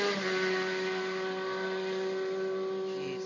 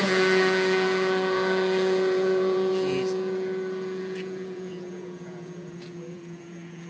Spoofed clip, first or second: second